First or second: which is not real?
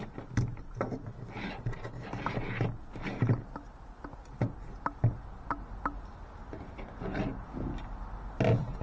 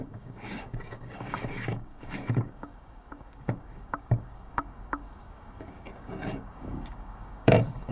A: second